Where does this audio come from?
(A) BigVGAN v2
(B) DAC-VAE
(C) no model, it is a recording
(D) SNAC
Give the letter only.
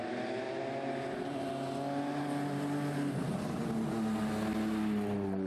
C